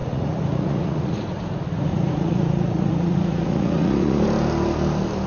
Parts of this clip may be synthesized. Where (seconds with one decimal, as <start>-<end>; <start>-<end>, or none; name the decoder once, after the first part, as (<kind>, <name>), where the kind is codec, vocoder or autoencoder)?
0.0-1.2 (vocoder, Vocos); 1.9-4.2